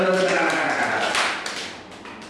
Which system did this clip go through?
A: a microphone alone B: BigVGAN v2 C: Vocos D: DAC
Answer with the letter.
A